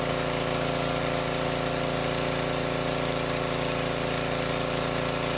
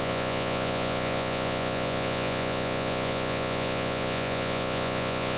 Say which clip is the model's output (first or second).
second